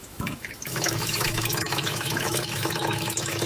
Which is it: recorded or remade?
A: remade